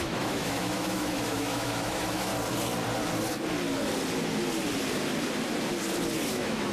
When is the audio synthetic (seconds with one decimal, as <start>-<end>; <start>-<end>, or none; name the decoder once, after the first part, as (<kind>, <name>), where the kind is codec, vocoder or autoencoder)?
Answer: 0.0-2.3 (autoencoder, DAC-VAE); 6.3-6.7